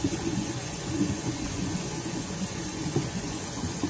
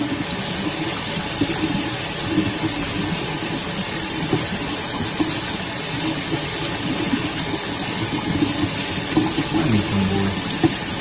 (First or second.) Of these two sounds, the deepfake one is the first